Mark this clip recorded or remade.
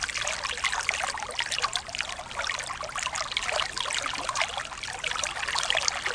recorded